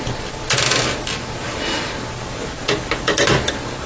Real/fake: real